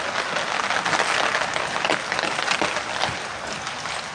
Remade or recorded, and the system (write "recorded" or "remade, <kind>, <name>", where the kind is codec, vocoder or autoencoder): recorded